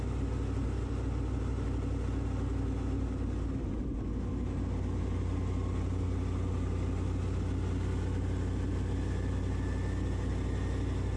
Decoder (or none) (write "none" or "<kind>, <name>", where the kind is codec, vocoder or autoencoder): none